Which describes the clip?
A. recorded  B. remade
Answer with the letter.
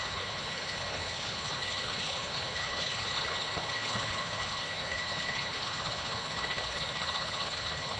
B